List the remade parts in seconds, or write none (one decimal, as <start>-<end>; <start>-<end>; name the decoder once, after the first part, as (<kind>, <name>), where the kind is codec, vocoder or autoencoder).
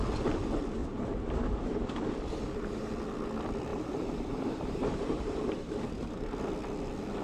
0.8-2.9 (vocoder, BigVGAN v2); 3.7-6.1